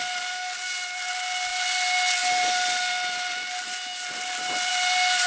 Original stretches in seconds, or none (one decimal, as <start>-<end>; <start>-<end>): 0.0-5.3